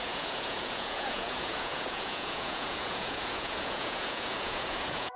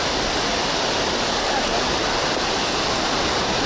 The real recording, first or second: second